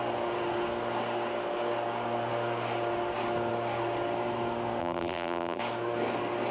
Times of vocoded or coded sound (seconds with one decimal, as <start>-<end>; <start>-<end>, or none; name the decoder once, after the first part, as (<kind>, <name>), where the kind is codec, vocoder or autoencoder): 4.8-5.6 (vocoder, BigVGAN v2)